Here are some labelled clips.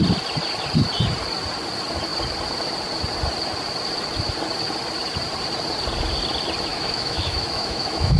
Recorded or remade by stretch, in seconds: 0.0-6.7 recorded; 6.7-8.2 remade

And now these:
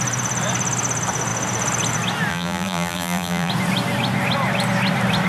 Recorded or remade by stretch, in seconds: 0.0-2.3 recorded; 2.3-3.5 remade; 3.5-5.3 recorded

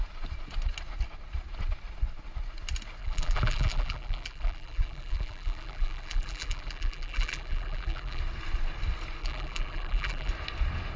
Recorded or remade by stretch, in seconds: 0.0-3.0 recorded; 3.0-8.2 remade; 8.2-9.2 recorded; 9.2-10.3 remade; 10.3-11.0 recorded

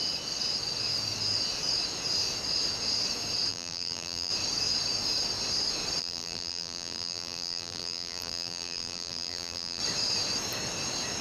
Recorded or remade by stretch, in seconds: 0.0-3.5 recorded; 3.5-4.3 remade; 4.3-6.0 recorded; 6.0-9.8 remade; 9.8-11.2 recorded

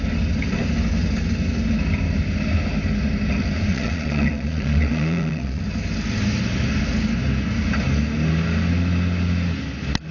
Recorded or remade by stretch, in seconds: 0.0-3.7 recorded; 3.7-5.6 remade; 5.6-10.1 recorded

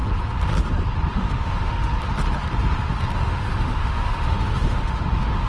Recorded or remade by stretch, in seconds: 0.0-1.1 recorded; 1.1-1.9 remade; 1.9-3.2 recorded; 3.2-5.5 remade